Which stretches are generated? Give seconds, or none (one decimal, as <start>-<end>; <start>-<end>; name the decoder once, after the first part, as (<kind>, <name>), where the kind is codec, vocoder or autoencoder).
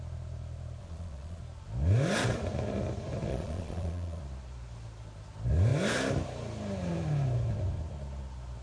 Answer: 0.8-1.4 (vocoder, Vocos); 3.3-4.2